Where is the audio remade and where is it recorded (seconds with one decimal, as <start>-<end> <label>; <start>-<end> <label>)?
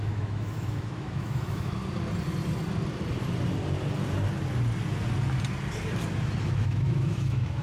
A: 0.0-1.8 remade; 1.8-6.4 recorded; 6.4-7.6 remade